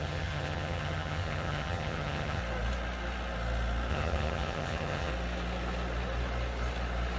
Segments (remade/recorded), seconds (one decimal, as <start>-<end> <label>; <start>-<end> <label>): 0.0-2.4 remade; 2.4-3.9 recorded; 3.9-5.1 remade; 5.1-7.2 recorded